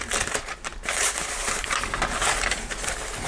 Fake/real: real